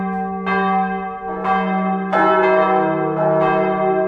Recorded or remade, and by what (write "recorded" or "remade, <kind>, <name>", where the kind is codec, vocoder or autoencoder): recorded